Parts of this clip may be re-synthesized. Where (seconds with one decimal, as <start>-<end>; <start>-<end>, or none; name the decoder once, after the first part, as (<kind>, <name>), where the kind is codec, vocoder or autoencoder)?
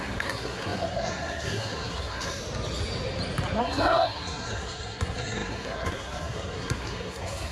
0.0-2.4 (codec, SNAC); 3.6-7.5